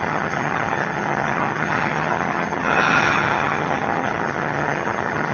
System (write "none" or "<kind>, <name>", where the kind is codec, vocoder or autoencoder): vocoder, HiFi-GAN